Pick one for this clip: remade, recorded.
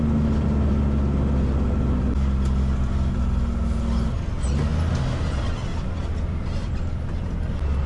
recorded